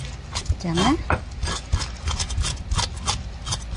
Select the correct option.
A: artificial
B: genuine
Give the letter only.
B